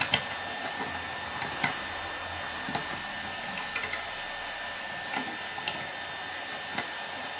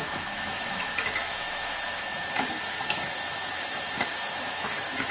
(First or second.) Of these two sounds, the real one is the first